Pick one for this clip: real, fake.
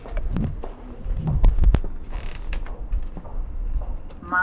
real